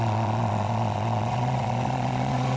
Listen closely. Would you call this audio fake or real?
fake